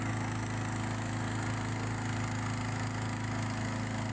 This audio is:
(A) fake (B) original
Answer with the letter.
B